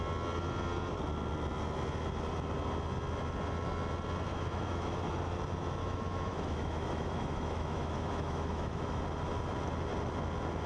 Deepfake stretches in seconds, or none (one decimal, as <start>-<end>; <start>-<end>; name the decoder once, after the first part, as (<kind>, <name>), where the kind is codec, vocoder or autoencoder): 4.3-5.1 (autoencoder, DAC-VAE); 5.8-9.0